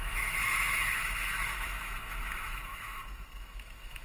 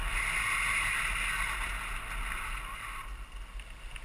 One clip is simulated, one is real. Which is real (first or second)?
second